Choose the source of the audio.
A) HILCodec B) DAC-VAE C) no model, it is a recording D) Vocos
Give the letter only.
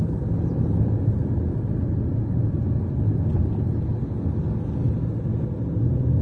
C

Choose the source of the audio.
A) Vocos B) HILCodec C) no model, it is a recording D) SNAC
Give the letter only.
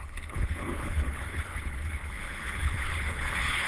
B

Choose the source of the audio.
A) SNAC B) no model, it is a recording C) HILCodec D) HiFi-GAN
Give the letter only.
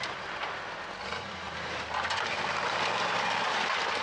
B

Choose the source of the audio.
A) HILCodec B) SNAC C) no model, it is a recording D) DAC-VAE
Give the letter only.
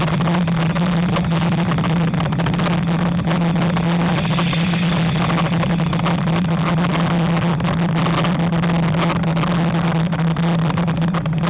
C